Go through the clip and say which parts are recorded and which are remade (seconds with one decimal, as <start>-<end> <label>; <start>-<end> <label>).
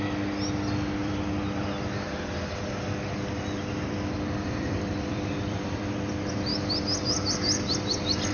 0.0-1.0 recorded; 1.0-2.6 remade; 2.6-4.4 recorded; 4.4-5.9 remade; 5.9-8.3 recorded